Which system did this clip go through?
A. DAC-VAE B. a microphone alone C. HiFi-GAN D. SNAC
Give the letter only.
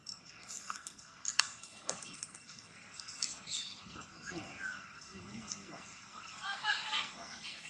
D